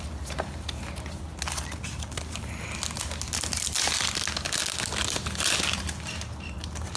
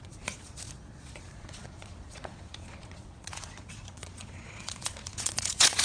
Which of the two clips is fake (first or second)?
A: second